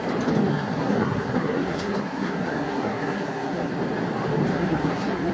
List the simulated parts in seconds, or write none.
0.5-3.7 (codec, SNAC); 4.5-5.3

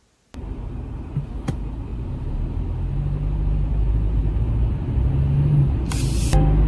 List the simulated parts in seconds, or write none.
none